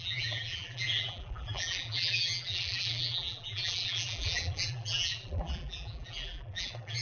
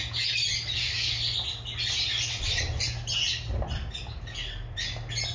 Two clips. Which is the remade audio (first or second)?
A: first